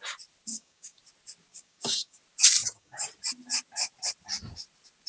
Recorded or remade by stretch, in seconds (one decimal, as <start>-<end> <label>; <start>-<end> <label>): 0.0-0.5 recorded; 0.5-1.0 remade; 1.0-1.5 recorded; 1.5-2.2 remade; 2.2-2.6 recorded; 2.6-3.1 remade; 3.1-5.1 recorded